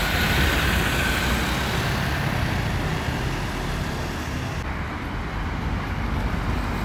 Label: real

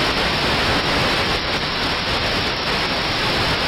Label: real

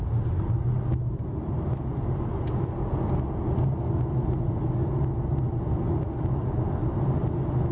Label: real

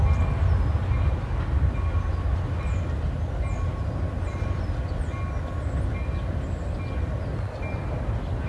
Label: real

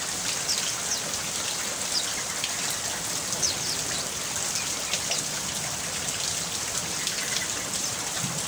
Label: real